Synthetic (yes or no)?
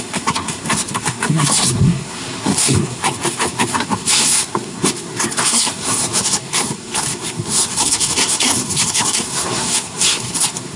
yes